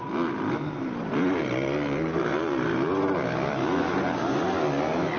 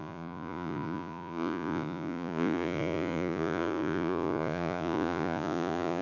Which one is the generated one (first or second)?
second